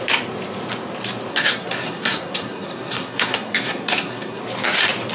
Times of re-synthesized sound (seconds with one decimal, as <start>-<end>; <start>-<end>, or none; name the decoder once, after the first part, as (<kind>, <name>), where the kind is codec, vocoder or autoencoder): 1.3-4.4 (codec, SNAC)